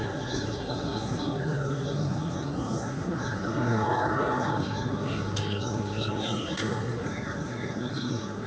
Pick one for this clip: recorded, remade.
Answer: remade